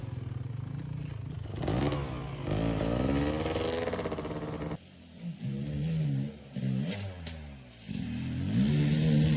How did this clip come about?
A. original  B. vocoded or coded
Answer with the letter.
A